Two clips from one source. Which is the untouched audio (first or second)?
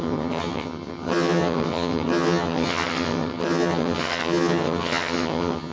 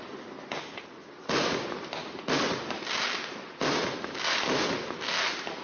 second